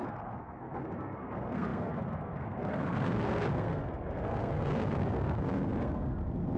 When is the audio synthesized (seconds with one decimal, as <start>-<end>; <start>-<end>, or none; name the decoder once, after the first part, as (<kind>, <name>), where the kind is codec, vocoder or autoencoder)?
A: 0.0-6.6 (codec, SNAC)